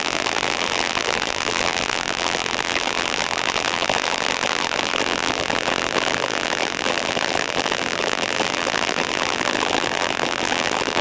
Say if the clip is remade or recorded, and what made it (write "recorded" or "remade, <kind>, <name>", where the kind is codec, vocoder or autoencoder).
remade, vocoder, BigVGAN v2